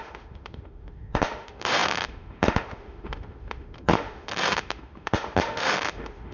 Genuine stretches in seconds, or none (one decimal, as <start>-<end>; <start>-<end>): none